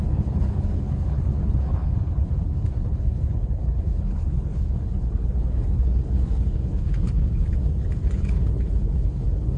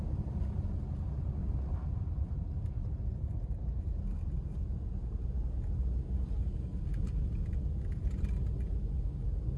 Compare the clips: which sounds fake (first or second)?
first